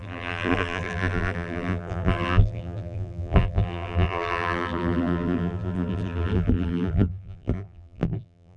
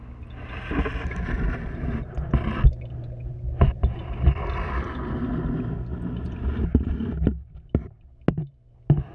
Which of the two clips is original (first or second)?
second